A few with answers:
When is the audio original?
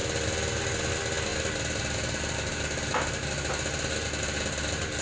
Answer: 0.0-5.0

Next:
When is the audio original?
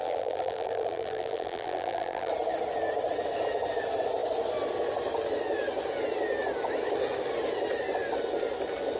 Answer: 2.3-9.0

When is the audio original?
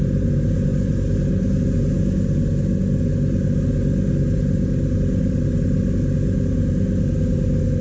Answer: 0.0-7.8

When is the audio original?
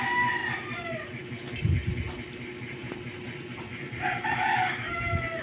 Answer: 0.0-0.4; 1.2-5.4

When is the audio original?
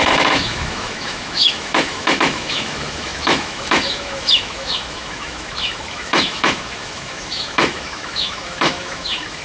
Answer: none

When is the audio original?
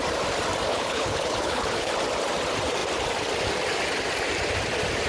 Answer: 0.0-0.7; 1.9-5.1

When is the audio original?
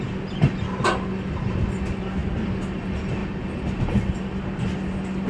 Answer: 0.0-5.3